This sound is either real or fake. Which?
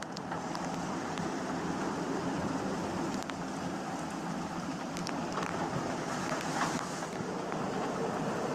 real